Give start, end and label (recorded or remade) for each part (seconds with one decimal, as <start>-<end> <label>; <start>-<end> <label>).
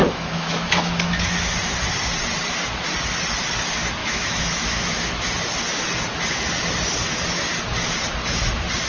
0.0-1.5 remade; 1.5-4.0 recorded; 4.0-5.3 remade; 5.3-8.9 recorded